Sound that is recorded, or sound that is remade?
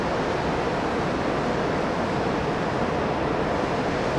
recorded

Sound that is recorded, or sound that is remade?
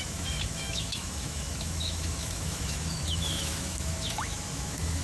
remade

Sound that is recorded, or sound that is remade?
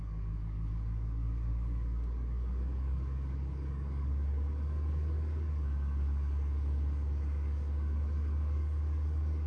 remade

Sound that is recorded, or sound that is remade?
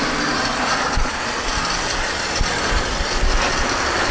recorded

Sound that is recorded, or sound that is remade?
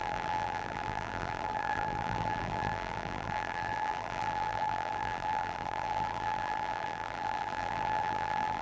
remade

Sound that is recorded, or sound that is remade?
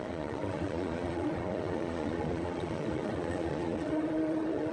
remade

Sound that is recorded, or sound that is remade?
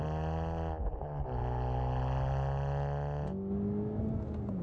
recorded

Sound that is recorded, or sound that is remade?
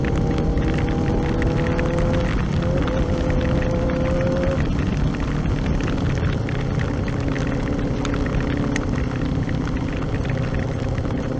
recorded